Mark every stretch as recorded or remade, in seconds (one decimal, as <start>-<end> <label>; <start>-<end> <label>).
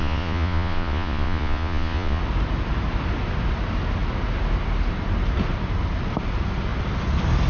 0.0-2.2 remade; 2.2-7.5 recorded